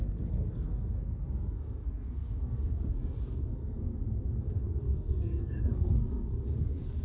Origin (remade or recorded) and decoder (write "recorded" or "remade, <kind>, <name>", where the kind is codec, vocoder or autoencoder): remade, codec, SNAC